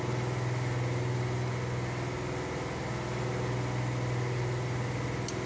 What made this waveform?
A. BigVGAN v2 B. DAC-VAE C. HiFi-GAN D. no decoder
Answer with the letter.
D